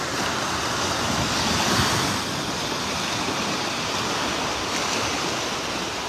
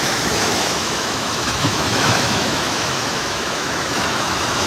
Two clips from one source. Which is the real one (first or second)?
first